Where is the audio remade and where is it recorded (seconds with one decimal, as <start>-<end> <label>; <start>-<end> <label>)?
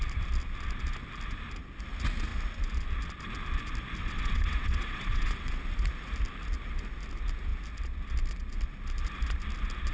0.0-4.0 recorded; 4.0-5.5 remade; 5.5-9.9 recorded